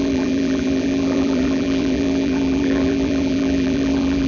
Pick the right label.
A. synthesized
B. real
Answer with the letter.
A